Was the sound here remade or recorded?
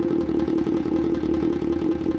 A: remade